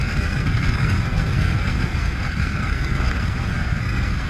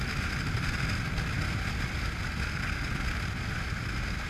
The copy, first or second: first